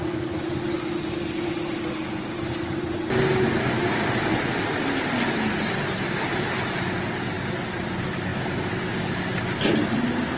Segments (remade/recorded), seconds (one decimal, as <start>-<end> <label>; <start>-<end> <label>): 0.0-10.4 recorded